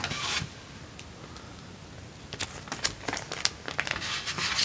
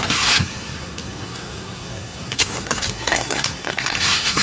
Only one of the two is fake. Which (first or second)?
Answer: second